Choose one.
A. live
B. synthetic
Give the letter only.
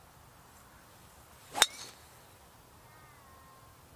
A